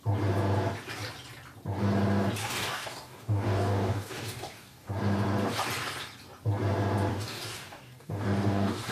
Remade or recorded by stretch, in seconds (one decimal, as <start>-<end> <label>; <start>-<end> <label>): 0.0-2.4 recorded; 2.4-4.9 remade; 4.9-7.1 recorded; 7.1-8.9 remade